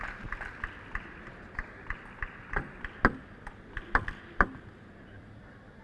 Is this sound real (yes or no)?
yes